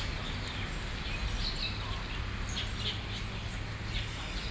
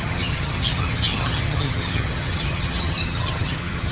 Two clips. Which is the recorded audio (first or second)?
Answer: first